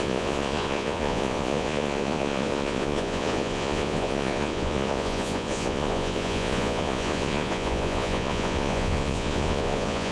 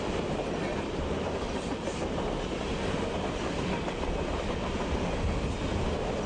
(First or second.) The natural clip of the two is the second